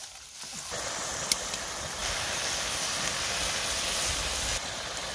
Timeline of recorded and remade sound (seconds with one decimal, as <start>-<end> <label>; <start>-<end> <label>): 0.0-5.1 recorded